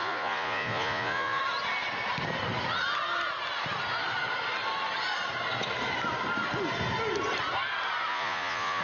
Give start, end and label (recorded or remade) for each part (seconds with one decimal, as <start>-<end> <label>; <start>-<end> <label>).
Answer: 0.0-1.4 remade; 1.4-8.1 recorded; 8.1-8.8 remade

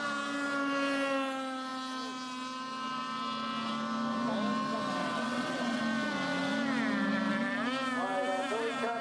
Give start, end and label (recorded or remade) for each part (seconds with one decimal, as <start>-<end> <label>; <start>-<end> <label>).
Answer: 0.0-5.0 recorded; 5.0-5.8 remade; 5.8-9.0 recorded

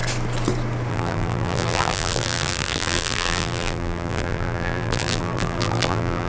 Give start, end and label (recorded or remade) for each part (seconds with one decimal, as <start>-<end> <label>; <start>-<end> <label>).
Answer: 0.0-0.9 recorded; 0.9-6.3 remade

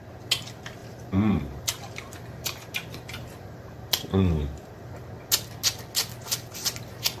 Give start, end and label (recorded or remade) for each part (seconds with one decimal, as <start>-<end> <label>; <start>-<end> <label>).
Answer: 0.0-0.8 recorded; 0.8-5.1 remade; 5.1-7.2 recorded

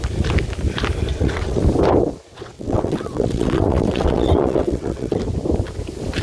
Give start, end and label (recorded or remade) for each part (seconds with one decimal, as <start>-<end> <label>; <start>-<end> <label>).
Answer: 0.0-1.1 recorded; 1.1-1.6 remade; 1.6-2.3 recorded; 2.3-5.2 remade; 5.2-6.2 recorded